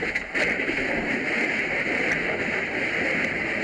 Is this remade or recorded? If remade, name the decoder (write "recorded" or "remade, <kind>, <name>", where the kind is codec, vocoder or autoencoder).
recorded